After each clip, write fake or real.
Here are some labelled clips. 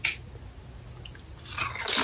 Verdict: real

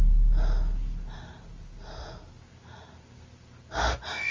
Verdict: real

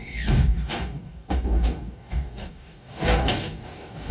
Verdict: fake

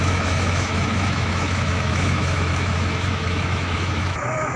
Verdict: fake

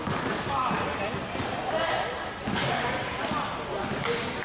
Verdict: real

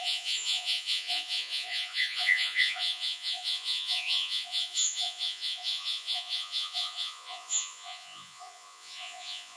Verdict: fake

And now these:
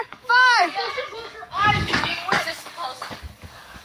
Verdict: fake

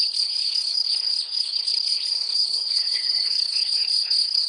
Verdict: fake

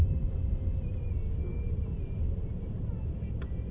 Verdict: real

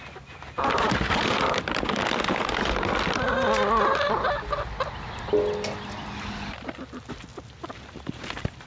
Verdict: real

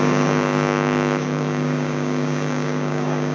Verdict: fake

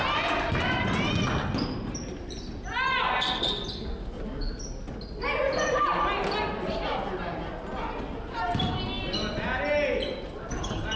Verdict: real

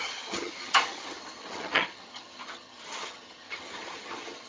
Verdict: fake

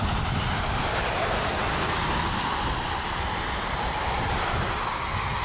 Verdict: real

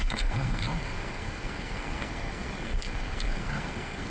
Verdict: fake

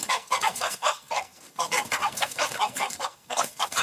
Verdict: fake